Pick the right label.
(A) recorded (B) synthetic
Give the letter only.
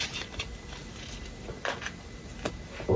A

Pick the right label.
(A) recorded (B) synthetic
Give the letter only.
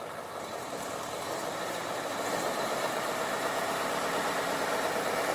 B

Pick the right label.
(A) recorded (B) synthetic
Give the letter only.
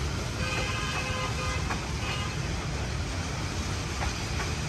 A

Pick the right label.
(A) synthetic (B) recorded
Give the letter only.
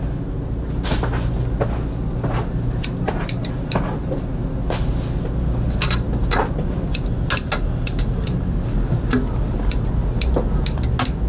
B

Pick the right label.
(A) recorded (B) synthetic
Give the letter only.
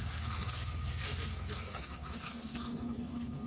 B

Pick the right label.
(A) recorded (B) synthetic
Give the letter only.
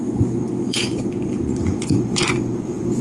B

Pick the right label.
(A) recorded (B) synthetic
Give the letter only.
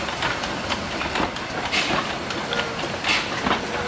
A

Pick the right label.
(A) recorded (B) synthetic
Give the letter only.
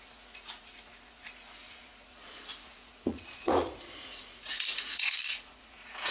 B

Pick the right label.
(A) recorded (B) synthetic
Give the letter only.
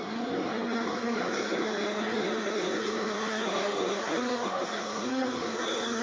B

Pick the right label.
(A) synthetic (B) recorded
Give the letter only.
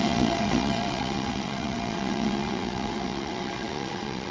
A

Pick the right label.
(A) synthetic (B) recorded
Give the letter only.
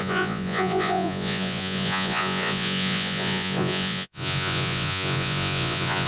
A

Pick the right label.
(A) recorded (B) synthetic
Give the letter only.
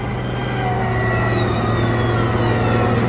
A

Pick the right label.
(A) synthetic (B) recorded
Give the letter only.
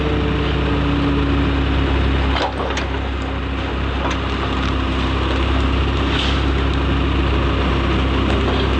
B